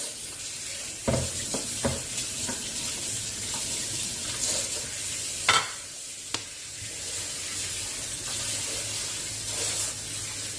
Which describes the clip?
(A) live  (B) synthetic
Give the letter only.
A